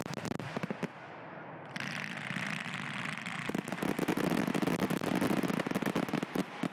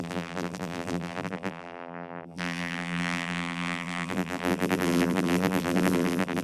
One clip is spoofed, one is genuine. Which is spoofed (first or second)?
second